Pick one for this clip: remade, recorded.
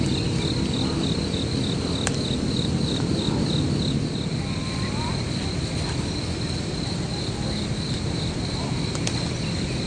recorded